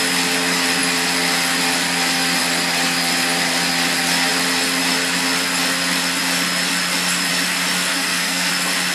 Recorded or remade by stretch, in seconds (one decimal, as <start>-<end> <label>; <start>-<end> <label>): 0.0-7.9 recorded; 7.9-8.5 remade; 8.5-8.9 recorded